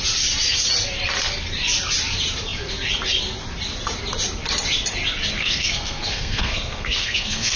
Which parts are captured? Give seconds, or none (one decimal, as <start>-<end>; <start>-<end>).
0.0-5.3